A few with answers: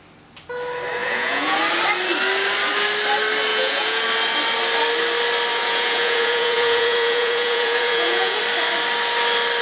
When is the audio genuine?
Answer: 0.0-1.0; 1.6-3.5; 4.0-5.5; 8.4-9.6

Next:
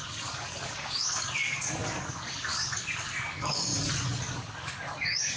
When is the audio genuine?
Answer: 3.7-4.2

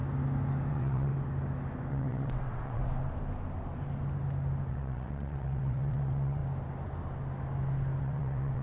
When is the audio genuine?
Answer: 0.0-0.7; 1.1-1.9; 2.8-4.7; 6.4-8.0

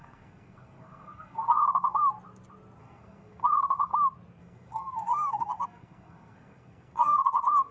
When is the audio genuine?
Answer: 2.0-2.8; 3.9-4.4

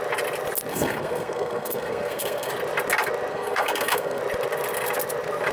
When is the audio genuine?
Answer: 0.0-0.7; 2.5-3.3; 4.2-5.5

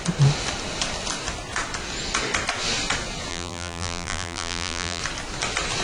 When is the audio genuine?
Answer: 0.0-3.3; 5.0-5.8